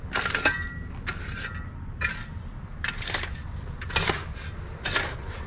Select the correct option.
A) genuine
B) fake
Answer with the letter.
A